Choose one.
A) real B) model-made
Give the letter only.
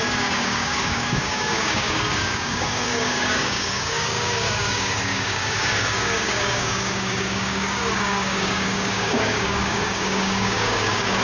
B